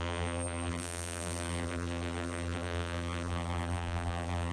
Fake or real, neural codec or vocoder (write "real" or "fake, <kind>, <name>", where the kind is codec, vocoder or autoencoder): fake, vocoder, BigVGAN v2